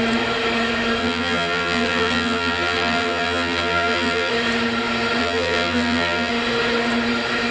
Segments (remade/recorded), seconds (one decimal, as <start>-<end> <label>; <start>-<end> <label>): 0.0-1.0 recorded; 1.0-4.3 remade; 4.3-5.2 recorded; 5.2-6.3 remade; 6.3-7.5 recorded